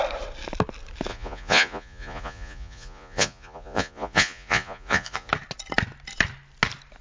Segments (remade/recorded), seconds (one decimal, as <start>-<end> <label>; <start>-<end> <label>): 0.0-1.1 recorded; 1.1-5.3 remade; 5.3-7.0 recorded